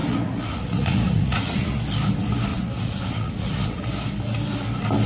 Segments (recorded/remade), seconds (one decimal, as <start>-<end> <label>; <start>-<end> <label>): 0.0-1.8 remade; 1.8-2.5 recorded; 2.5-3.9 remade; 3.9-5.1 recorded